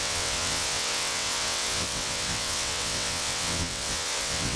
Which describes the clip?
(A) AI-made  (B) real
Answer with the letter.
A